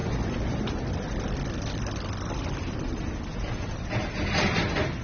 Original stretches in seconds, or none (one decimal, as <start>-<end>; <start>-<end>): 0.0-5.0